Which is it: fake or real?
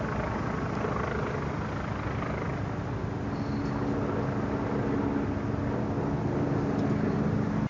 real